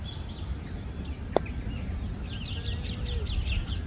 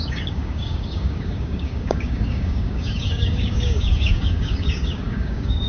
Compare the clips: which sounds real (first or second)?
first